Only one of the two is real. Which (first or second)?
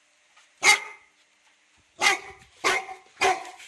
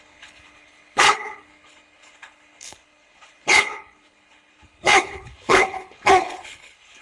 first